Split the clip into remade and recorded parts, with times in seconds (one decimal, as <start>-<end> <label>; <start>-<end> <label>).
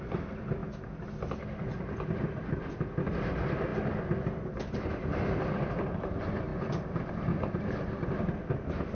0.0-0.6 remade; 0.6-1.1 recorded; 1.1-8.9 remade